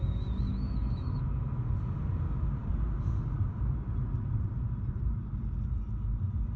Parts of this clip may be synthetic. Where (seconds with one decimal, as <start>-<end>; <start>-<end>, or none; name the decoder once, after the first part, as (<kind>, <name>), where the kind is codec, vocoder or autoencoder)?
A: 0.5-1.2 (autoencoder, DAC-VAE)